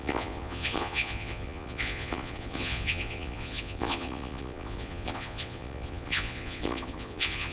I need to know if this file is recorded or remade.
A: remade